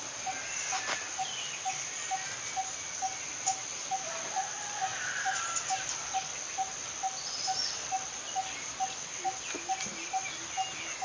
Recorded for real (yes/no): yes